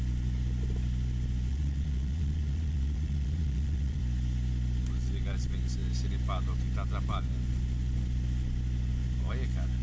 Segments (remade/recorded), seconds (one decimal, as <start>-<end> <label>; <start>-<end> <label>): 0.0-1.5 recorded; 1.5-4.0 remade; 4.0-9.8 recorded